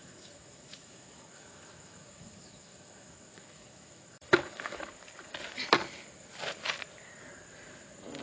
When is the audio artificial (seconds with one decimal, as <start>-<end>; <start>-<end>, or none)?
0.0-4.9